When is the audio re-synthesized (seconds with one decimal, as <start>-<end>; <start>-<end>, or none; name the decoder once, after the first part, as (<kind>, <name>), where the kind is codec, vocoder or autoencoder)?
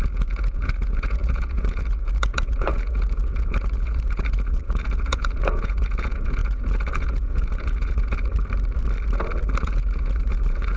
0.0-8.3 (vocoder, Vocos); 9.6-10.8